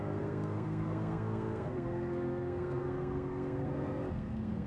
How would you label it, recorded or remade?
remade